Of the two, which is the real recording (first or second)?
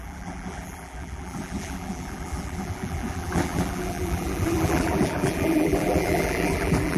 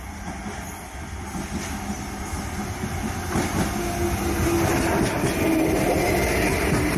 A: second